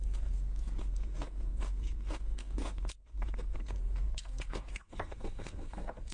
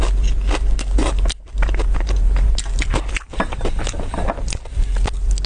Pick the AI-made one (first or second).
first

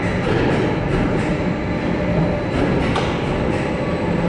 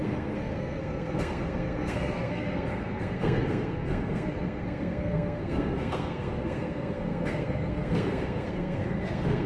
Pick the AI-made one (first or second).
second